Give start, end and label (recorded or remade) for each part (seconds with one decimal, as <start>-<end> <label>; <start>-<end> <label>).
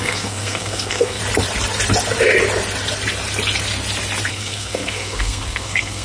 0.0-1.2 remade; 1.2-4.3 recorded; 4.3-6.0 remade